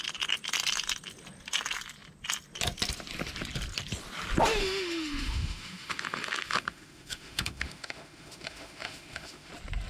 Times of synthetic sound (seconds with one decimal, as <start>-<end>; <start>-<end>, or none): 4.6-9.5